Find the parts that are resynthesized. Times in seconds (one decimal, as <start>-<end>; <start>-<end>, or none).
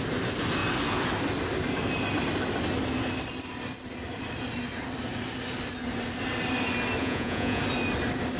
7.0-7.6